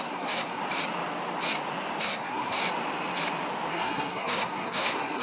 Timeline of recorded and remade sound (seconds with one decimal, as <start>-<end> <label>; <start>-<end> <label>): 0.0-0.6 remade; 0.6-2.0 recorded; 2.0-2.6 remade; 2.6-3.7 recorded; 3.7-5.2 remade